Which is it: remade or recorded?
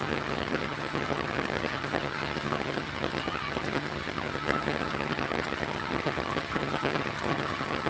remade